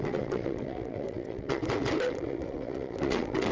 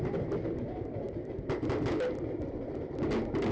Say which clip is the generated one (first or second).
first